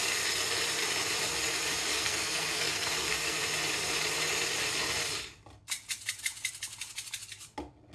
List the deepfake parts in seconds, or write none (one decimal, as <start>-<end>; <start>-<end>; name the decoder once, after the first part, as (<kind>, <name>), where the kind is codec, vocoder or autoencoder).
1.9-3.4 (codec, SNAC)